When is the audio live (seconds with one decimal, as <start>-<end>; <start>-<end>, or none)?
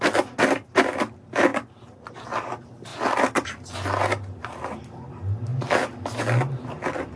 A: 0.0-1.5; 2.1-7.2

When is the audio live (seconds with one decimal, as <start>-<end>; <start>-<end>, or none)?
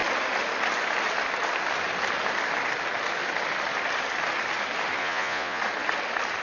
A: 0.0-5.0; 5.6-6.4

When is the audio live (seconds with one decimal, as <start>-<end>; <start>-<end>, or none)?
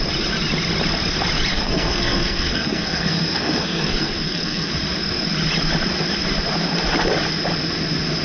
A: 0.0-1.5; 4.7-8.2